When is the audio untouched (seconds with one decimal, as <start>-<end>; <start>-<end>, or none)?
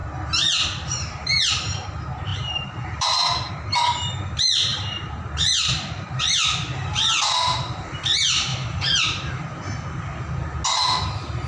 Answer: 1.5-2.3; 3.5-4.7; 8.0-8.5; 9.3-11.5